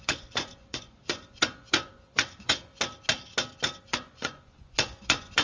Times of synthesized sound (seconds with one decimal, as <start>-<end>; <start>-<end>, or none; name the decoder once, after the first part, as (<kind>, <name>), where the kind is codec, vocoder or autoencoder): 0.0-2.7 (vocoder, Vocos); 3.8-5.4